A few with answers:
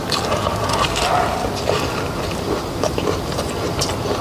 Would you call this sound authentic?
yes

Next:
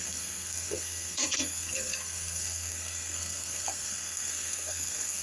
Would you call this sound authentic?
no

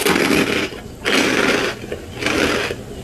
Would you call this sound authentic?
yes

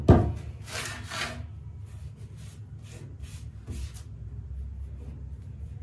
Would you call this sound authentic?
yes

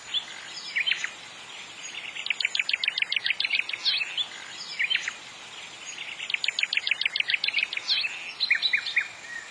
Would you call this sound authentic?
yes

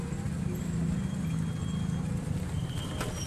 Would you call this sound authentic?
yes